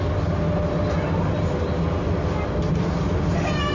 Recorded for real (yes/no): yes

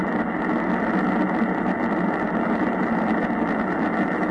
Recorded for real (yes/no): yes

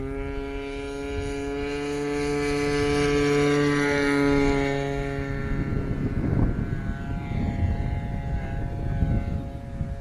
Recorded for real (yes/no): yes